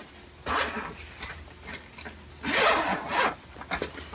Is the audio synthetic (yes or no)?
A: no